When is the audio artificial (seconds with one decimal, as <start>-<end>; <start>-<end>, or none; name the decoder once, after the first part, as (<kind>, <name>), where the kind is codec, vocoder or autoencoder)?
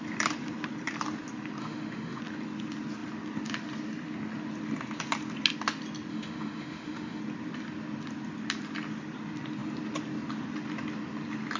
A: 1.6-2.2 (autoencoder, DAC-VAE); 6.1-7.2